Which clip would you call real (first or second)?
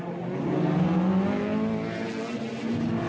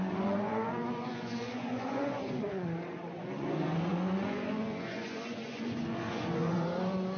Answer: first